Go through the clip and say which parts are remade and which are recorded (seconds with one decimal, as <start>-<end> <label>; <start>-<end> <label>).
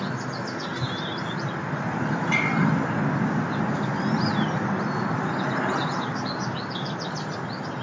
0.0-7.8 recorded